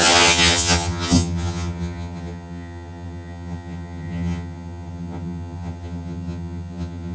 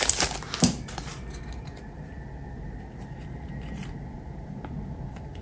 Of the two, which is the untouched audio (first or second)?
second